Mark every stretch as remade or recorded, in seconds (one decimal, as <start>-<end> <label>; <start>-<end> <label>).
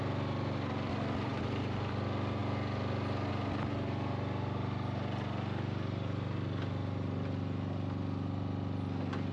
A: 0.0-1.3 recorded; 1.3-1.9 remade; 1.9-9.3 recorded